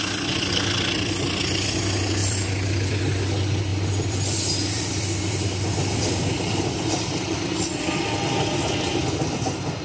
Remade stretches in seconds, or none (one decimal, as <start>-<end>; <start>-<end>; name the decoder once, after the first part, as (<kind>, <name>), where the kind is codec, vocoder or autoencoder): 2.2-2.9 (vocoder, BigVGAN v2); 3.7-8.7